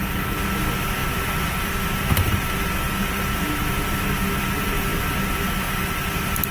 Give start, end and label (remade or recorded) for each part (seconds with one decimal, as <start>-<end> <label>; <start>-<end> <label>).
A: 0.0-6.5 recorded